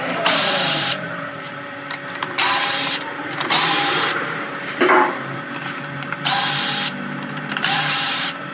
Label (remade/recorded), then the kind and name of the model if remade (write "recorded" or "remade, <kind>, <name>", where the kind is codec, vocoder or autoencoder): remade, vocoder, BigVGAN v2